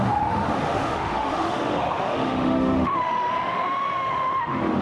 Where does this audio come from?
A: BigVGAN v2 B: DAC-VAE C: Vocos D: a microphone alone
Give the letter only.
B